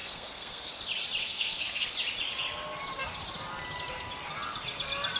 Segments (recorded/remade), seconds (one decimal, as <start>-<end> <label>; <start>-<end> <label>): 0.0-0.7 remade; 0.7-1.2 recorded; 1.2-1.9 remade; 1.9-5.2 recorded